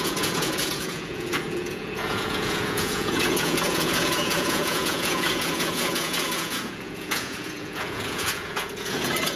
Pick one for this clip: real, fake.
fake